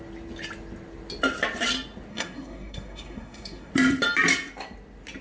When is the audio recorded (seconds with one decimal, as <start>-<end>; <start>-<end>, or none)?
0.0-2.1; 3.7-5.2

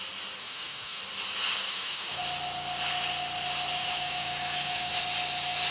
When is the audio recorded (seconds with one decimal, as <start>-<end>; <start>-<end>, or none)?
0.0-0.4; 1.0-1.7; 2.2-3.8; 5.0-5.7

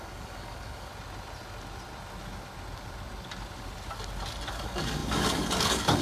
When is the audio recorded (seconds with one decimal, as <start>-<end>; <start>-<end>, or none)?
0.9-4.5

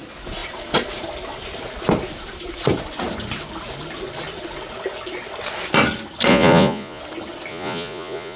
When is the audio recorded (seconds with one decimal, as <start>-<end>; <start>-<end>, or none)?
0.0-6.3; 7.0-7.5

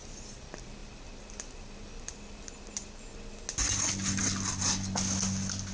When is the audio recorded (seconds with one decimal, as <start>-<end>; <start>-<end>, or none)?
0.0-5.7

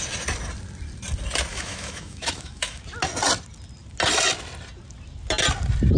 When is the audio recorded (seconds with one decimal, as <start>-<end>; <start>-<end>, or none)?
0.0-1.5; 2.8-6.0